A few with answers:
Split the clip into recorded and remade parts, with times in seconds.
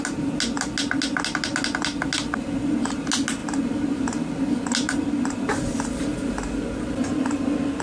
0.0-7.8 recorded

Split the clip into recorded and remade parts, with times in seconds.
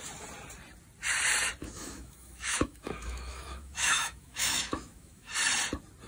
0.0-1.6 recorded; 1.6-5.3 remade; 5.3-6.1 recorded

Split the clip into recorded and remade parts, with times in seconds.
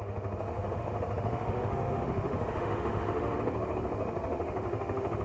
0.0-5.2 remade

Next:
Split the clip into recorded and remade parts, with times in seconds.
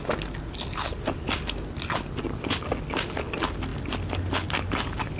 0.0-5.2 recorded